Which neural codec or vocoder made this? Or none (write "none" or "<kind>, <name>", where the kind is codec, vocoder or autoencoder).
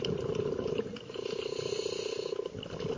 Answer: none